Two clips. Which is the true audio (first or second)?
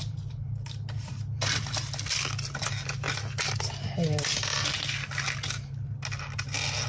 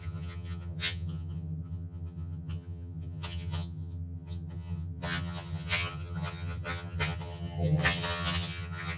first